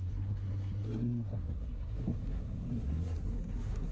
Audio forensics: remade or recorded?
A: remade